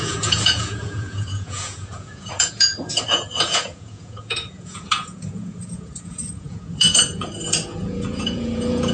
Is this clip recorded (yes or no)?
no